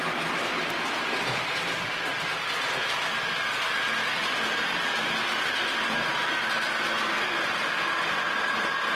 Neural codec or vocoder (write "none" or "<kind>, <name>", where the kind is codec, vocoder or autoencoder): none